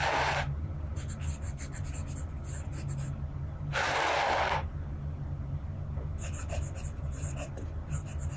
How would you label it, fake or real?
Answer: real